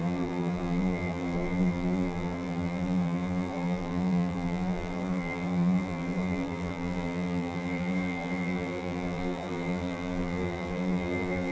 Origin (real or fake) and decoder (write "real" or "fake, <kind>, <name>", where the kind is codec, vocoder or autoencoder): fake, vocoder, BigVGAN v2